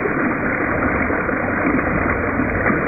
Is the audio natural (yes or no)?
no